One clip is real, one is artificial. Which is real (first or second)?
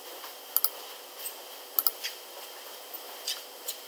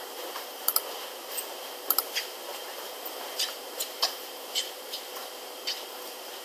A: first